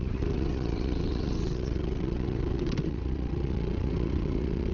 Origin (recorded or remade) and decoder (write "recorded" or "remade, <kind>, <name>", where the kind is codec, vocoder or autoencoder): remade, vocoder, WaveNeXt